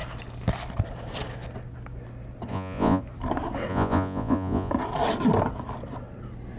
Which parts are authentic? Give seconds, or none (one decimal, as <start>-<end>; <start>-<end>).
0.0-2.5; 3.0-3.7; 4.7-6.6